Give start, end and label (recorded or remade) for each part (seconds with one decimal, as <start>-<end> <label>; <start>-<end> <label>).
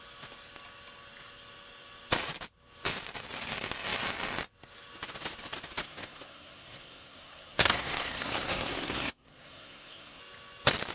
0.0-5.8 recorded; 5.8-10.2 remade; 10.2-10.9 recorded